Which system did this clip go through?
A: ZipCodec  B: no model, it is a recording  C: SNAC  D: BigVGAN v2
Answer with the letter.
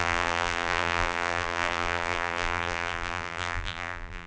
D